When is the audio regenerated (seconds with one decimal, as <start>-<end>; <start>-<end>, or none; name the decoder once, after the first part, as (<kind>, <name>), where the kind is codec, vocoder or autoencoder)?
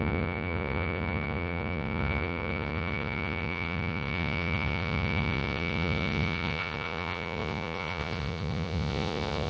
0.0-9.5 (vocoder, Vocos)